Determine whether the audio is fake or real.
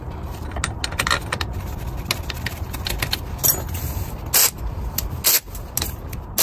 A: real